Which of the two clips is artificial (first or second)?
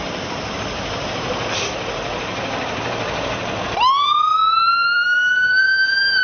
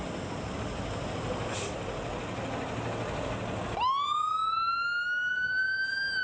first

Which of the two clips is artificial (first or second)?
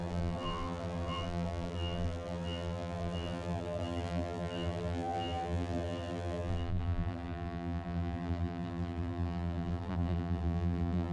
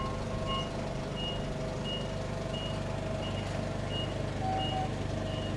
first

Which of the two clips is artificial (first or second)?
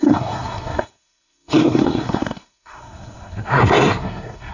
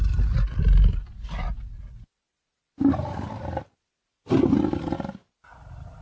first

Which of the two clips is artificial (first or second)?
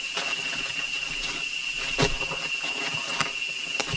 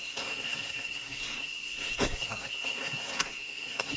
second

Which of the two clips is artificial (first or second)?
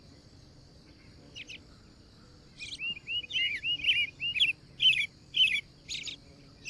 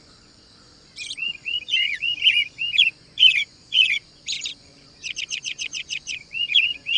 second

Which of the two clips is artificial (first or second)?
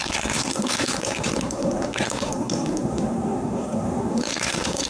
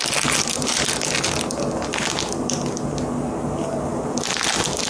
first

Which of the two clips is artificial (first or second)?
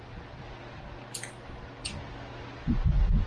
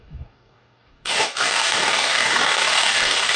second